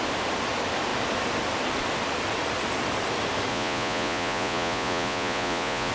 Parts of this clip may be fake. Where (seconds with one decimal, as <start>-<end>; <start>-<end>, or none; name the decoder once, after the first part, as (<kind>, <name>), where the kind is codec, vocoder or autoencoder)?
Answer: 3.5-5.9 (vocoder, Vocos)